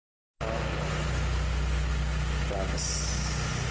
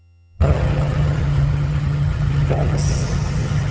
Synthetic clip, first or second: second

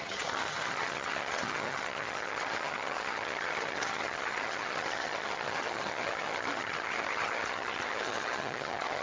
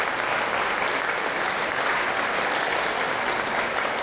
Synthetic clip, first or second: first